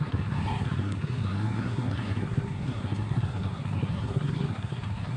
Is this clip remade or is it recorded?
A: remade